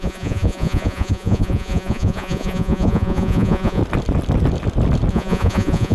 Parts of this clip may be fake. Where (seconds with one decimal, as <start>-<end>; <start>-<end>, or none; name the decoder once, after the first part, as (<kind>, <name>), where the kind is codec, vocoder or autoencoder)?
0.0-3.8 (vocoder, Vocos); 5.1-5.9